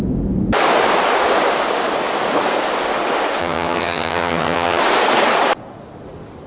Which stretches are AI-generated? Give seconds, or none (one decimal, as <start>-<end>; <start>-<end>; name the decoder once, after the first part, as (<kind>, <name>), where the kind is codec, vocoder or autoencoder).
3.4-4.8 (vocoder, HiFi-GAN)